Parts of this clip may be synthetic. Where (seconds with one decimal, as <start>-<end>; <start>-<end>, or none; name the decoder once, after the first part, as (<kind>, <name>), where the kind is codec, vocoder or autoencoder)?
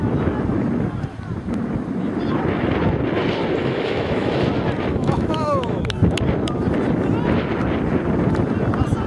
3.6-4.4 (autoencoder, DAC-VAE); 4.9-5.8